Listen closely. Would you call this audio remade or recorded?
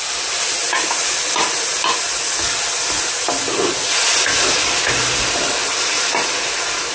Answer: recorded